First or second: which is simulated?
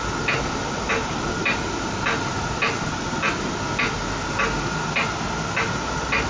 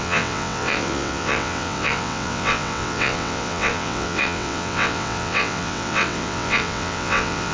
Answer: second